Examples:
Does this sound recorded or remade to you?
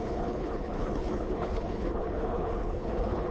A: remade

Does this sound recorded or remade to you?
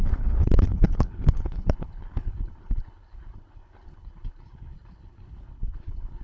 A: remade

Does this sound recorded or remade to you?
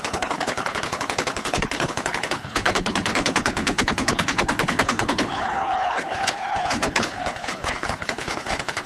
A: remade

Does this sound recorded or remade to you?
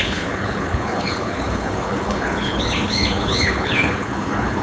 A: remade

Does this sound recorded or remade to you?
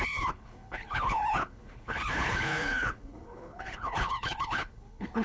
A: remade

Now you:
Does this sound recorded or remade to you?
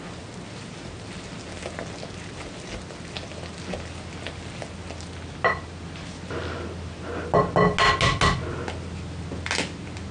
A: recorded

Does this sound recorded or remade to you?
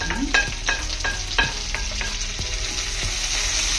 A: recorded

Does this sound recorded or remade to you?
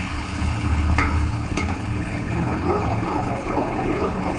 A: remade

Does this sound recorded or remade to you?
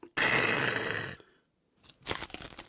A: recorded